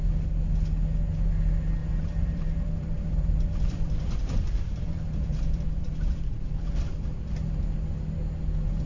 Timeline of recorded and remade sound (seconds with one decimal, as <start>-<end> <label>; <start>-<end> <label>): 0.0-1.8 recorded; 1.8-6.8 remade; 6.8-8.9 recorded